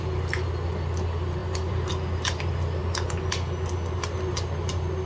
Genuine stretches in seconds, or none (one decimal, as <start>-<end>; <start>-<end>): 0.0-1.4; 2.8-5.1